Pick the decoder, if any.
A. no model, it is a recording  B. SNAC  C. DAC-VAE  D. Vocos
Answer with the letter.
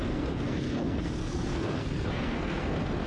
B